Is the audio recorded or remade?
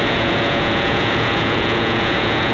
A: remade